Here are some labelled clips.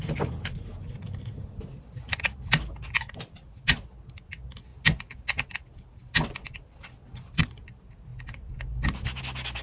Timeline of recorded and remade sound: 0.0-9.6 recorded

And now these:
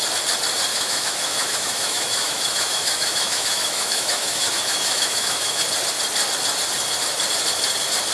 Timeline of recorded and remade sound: 0.0-0.7 recorded; 0.7-5.6 remade; 5.6-8.1 recorded